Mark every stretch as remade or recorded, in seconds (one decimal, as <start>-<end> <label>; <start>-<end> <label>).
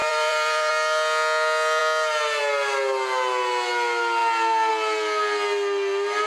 0.0-0.7 remade; 0.7-6.3 recorded